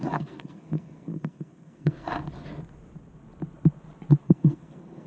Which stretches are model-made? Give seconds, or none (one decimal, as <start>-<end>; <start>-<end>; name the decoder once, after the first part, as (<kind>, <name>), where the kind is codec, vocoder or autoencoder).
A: 0.0-2.1 (codec, SNAC); 4.2-5.1